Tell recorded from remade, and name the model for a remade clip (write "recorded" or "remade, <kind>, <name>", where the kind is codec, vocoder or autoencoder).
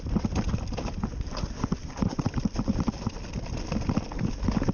recorded